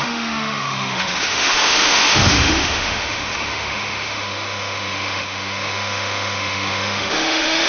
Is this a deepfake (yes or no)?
yes